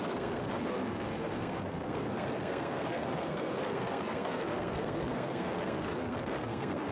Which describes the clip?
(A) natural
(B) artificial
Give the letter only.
B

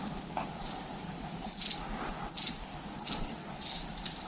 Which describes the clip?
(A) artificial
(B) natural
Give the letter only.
B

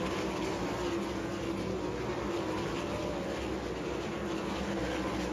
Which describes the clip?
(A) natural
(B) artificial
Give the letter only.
A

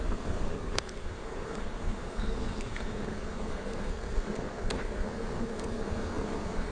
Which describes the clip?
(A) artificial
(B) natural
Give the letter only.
A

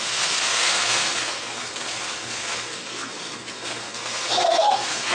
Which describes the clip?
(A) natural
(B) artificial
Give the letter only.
B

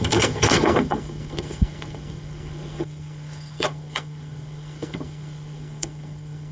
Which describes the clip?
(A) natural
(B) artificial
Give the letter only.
B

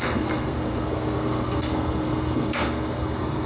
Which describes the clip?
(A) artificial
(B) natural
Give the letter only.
A